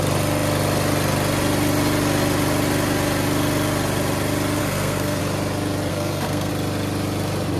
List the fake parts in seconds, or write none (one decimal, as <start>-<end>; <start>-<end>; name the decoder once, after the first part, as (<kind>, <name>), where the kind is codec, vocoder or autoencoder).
4.6-5.2 (codec, SNAC); 5.9-6.5

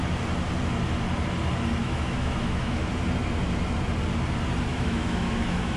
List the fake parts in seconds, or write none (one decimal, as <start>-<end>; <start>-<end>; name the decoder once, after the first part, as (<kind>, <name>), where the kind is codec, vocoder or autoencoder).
1.8-2.9 (autoencoder, DAC-VAE); 4.7-5.8

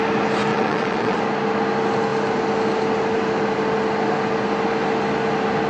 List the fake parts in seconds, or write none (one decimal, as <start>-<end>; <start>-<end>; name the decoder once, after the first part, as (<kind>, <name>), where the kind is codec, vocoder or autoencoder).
0.5-1.2 (vocoder, Vocos)

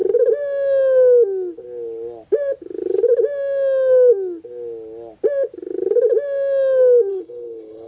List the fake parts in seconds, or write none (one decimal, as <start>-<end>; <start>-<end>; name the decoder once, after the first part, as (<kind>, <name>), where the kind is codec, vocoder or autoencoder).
7.1-7.9 (codec, HILCodec)